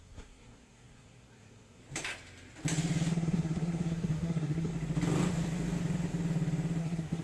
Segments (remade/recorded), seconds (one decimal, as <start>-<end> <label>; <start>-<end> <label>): 0.0-1.8 remade; 1.8-3.1 recorded; 3.1-4.7 remade; 4.7-6.8 recorded; 6.8-7.2 remade